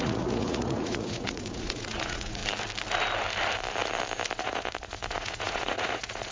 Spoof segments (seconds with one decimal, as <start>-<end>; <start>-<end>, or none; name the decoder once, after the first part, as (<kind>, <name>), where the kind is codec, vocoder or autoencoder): 0.0-2.4 (vocoder, Vocos); 4.4-6.3